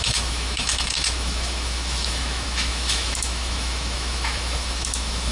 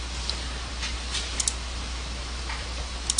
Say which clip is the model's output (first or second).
first